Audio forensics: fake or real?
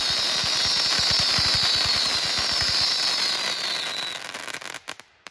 real